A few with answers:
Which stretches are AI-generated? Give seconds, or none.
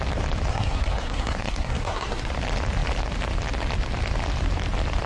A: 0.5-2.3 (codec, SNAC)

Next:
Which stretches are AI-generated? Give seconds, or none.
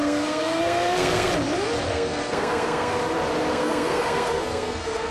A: 0.0-1.3 (codec, SNAC); 1.9-3.0; 3.5-5.1